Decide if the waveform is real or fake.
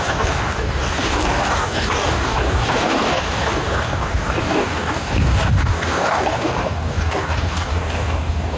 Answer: fake